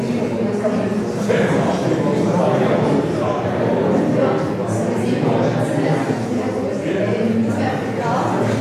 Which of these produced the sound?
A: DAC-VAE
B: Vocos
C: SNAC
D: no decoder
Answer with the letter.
D